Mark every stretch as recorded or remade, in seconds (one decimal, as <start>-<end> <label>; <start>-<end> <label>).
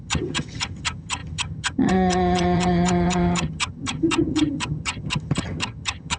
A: 0.0-6.2 remade